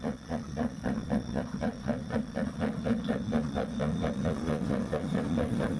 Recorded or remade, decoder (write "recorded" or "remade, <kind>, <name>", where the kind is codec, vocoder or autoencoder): remade, vocoder, Vocos